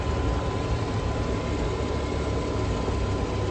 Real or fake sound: real